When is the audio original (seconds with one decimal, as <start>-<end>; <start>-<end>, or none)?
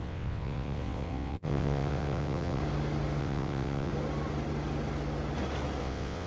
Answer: 2.6-3.2; 3.9-5.8